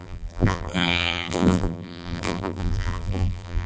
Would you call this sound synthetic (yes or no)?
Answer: yes